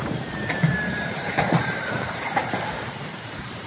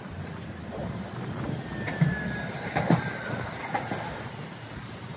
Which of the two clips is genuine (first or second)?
second